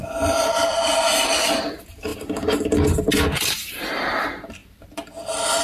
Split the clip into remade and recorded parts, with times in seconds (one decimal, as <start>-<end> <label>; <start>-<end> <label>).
0.0-5.6 recorded